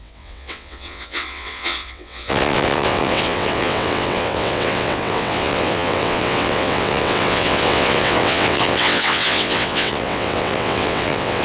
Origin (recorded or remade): remade